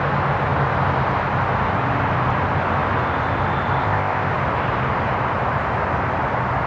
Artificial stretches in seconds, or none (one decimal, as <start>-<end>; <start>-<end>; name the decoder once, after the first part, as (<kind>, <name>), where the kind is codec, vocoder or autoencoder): 3.8-4.3 (codec, ZipCodec)